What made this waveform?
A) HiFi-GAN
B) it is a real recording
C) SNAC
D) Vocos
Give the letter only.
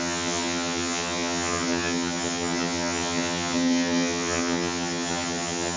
A